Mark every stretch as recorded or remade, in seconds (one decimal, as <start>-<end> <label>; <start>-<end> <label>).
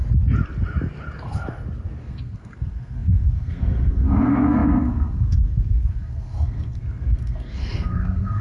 0.0-2.0 recorded; 2.0-8.4 remade